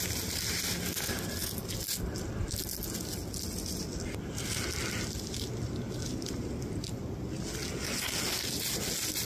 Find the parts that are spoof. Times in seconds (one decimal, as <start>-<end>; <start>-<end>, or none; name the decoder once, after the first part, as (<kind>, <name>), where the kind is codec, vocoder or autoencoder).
none